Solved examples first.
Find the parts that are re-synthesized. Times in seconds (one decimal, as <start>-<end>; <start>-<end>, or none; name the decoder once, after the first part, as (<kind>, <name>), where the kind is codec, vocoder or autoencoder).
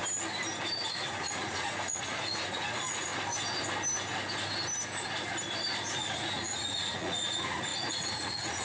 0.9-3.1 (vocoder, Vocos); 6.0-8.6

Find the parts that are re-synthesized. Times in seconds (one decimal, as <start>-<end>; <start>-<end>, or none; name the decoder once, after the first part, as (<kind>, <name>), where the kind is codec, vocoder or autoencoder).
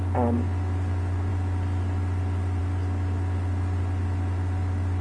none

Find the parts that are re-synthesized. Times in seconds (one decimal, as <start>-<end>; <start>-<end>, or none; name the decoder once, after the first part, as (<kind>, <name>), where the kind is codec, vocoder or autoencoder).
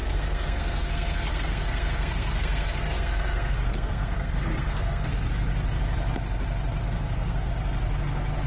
0.0-5.1 (codec, SNAC); 6.8-7.5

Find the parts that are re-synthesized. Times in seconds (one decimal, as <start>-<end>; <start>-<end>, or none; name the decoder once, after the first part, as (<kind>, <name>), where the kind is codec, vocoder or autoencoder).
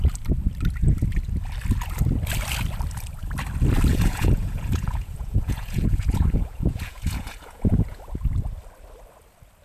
3.9-8.0 (vocoder, Vocos)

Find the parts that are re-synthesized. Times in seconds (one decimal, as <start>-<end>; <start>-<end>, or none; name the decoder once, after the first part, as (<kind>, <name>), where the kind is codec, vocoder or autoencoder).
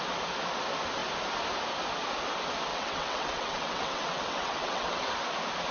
2.7-5.1 (vocoder, WaveNeXt)